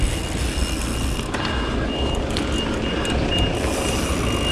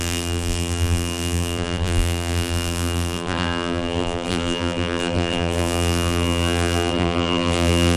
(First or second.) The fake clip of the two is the second